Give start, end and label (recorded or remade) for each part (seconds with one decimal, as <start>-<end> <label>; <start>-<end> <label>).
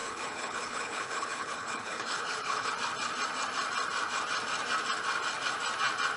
0.0-2.7 remade; 2.7-6.2 recorded